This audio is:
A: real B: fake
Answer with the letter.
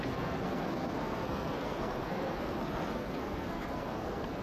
B